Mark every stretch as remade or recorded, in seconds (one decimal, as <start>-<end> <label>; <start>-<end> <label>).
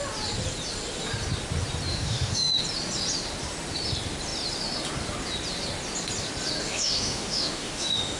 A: 0.0-1.9 recorded; 1.9-2.6 remade; 2.6-6.6 recorded; 6.6-8.2 remade